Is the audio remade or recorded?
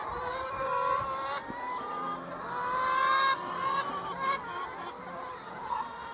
recorded